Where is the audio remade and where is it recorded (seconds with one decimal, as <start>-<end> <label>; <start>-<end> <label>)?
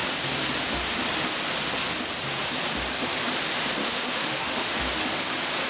0.0-3.8 recorded; 3.8-4.7 remade; 4.7-5.7 recorded